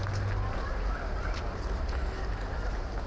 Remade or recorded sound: recorded